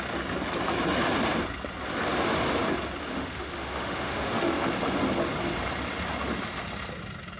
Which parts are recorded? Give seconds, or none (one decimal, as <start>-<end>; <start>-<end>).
0.0-3.0; 4.7-7.4